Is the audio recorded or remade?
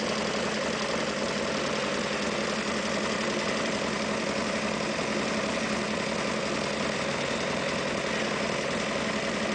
recorded